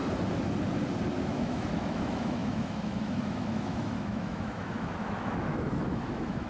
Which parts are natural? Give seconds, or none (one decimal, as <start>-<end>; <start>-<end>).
0.0-1.1